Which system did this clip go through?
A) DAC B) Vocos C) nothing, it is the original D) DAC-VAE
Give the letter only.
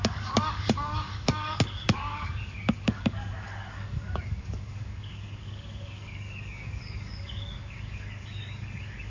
A